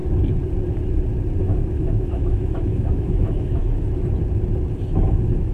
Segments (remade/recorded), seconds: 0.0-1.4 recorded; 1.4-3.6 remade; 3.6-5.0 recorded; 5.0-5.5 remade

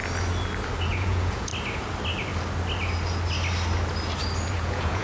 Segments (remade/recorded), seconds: 0.0-0.8 recorded; 0.8-1.5 remade; 1.5-4.5 recorded; 4.5-5.0 remade